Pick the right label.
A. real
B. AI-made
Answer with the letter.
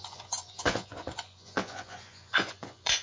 B